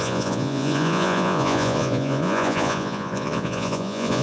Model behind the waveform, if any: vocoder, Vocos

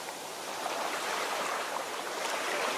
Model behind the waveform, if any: vocoder, BigVGAN v2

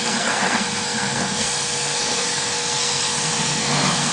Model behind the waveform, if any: codec, SNAC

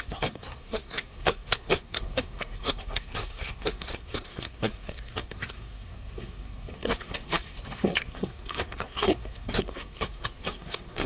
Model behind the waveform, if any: codec, SNAC